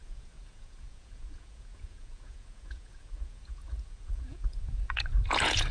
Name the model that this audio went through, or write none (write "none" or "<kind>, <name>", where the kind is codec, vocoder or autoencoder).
vocoder, Vocos